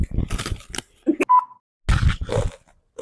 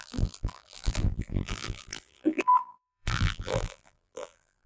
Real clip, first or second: first